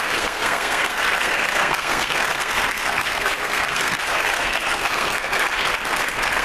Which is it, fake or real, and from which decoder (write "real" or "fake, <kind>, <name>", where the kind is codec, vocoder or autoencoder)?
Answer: fake, codec, SNAC